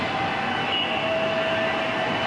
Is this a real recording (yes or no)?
yes